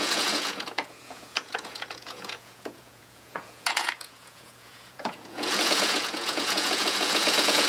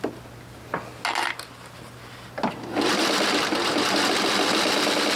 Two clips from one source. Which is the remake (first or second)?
first